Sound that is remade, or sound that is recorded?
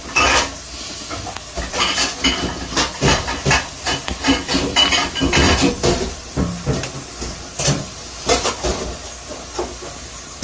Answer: recorded